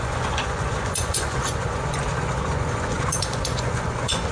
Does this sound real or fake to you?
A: fake